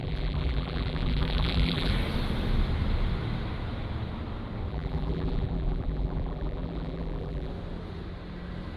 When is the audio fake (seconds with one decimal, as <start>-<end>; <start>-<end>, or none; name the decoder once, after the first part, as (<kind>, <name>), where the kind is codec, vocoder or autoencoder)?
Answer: 0.0-1.9 (vocoder, BigVGAN v2); 4.7-7.5